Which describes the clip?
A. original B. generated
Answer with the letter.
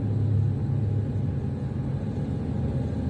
A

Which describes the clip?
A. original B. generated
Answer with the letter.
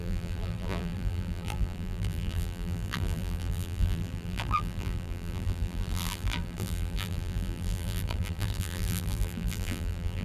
B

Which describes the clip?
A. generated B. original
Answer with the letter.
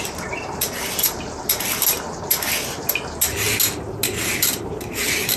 B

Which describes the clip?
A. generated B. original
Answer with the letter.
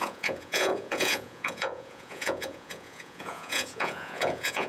A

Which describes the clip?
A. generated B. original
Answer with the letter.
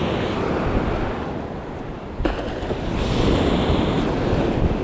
B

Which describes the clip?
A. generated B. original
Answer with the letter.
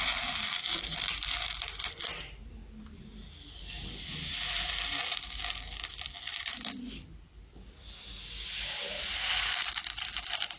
B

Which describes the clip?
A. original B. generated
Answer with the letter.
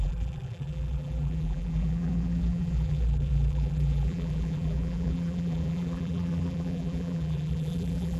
B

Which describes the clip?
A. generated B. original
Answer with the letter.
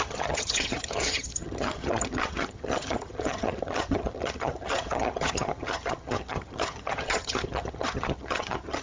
A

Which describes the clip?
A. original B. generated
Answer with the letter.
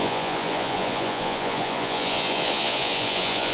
B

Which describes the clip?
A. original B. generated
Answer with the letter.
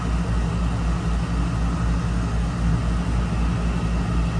A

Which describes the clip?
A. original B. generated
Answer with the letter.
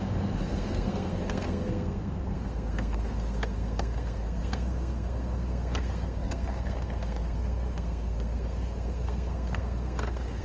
B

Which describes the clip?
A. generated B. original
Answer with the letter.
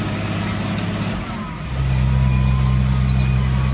B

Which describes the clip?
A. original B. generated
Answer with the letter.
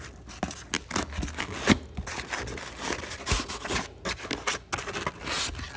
A